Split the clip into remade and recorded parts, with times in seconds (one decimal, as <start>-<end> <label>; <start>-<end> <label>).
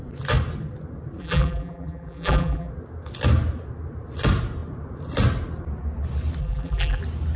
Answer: 0.0-1.2 recorded; 1.2-2.7 remade; 2.7-6.4 recorded; 6.4-7.0 remade; 7.0-7.4 recorded